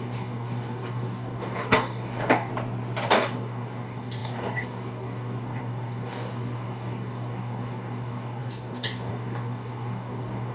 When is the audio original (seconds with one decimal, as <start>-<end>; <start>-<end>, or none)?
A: 2.5-3.1